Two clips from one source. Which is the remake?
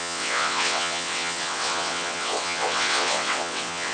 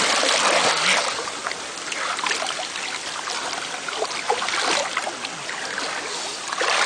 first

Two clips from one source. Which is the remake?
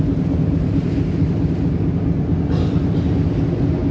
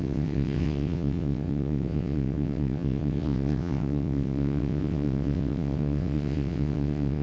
second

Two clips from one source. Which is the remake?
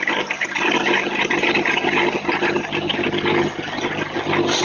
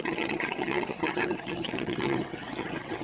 second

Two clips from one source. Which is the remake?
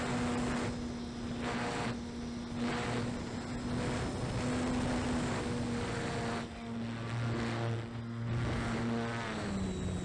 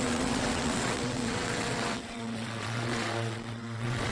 second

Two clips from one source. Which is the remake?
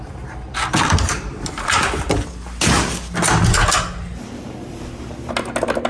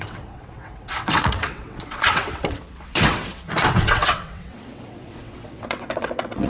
second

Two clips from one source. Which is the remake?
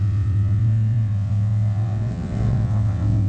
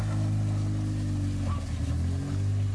first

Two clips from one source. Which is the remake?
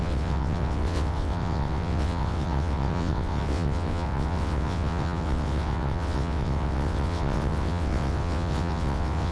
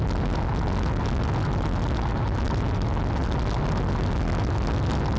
first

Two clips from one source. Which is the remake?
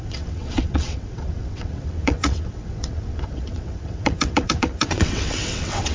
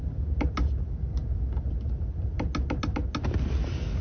first